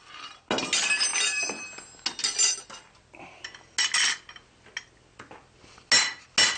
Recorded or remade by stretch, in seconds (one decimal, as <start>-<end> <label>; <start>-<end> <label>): 0.0-6.6 recorded